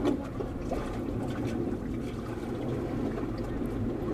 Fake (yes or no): no